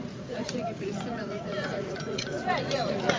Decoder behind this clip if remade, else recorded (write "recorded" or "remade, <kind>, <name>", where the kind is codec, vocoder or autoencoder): remade, vocoder, Vocos